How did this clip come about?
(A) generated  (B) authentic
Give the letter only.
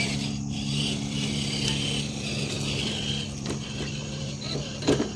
A